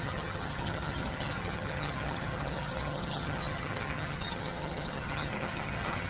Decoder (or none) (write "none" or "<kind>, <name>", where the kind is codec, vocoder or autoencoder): vocoder, HiFi-GAN